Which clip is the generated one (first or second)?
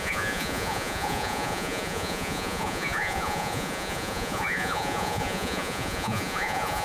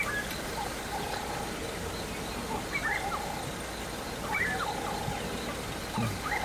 first